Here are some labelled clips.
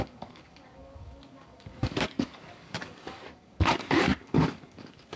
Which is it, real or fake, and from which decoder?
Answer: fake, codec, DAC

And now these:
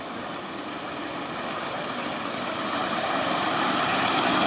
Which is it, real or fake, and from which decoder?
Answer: real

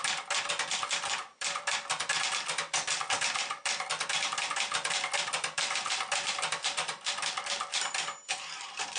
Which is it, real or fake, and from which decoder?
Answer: fake, vocoder, BigVGAN v2